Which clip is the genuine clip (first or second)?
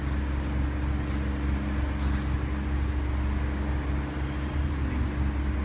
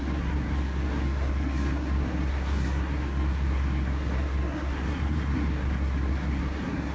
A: first